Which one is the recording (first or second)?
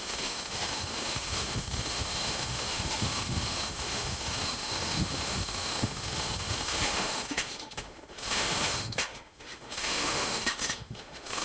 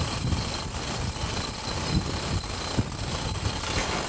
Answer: second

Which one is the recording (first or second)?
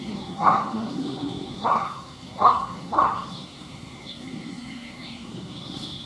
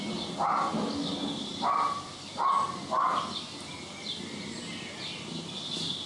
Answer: second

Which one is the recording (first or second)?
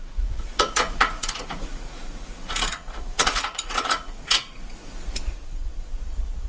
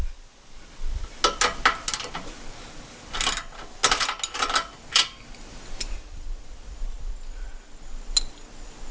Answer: second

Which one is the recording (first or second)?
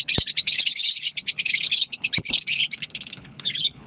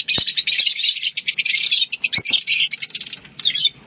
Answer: second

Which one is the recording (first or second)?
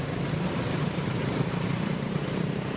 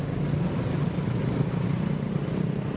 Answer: second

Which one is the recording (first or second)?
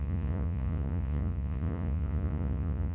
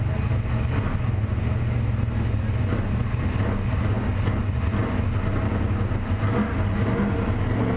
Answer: second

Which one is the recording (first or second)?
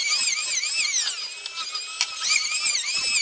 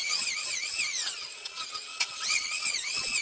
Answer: first